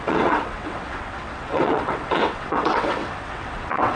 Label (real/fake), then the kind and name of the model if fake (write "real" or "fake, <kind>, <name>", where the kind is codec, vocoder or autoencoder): fake, vocoder, WaveNeXt